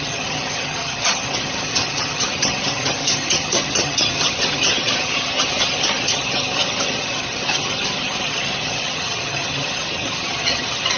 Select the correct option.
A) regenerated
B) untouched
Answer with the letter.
A